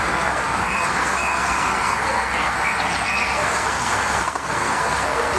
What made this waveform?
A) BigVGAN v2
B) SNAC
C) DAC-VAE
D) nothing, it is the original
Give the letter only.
B